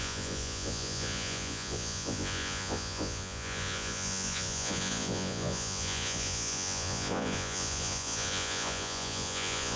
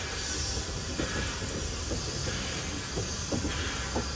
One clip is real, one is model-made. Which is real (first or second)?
second